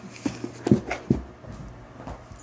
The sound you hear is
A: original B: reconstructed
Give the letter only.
A